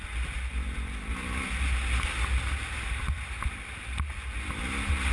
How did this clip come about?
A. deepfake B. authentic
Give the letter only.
B